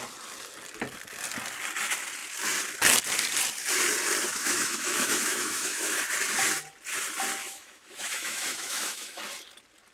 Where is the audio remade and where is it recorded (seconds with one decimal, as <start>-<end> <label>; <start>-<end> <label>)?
0.0-4.3 recorded; 4.3-6.0 remade; 6.0-7.4 recorded; 7.4-9.2 remade; 9.2-9.9 recorded